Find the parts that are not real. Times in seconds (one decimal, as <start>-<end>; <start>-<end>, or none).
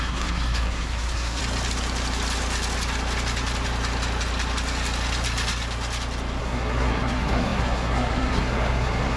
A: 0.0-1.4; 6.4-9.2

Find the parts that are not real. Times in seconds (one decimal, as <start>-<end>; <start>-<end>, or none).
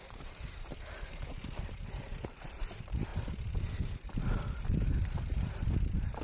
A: 0.0-3.1; 5.5-6.2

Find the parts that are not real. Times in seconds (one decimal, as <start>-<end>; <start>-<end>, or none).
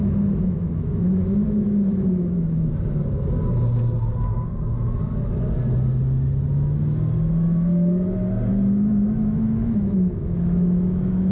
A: 0.0-2.7; 8.5-11.3